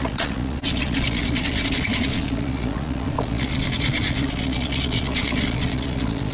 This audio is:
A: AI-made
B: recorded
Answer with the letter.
A